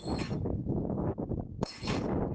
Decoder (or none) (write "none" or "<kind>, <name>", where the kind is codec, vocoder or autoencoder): codec, DAC